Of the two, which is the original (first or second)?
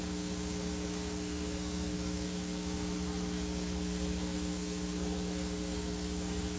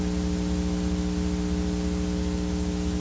second